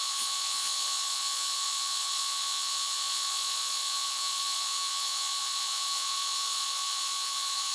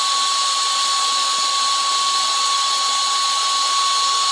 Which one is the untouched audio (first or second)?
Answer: second